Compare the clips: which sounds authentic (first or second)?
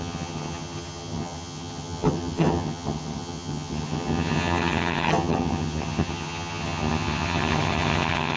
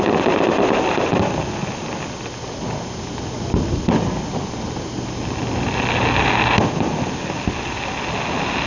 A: second